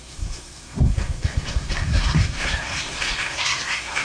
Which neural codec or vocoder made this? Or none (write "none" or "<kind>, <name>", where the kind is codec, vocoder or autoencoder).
codec, SNAC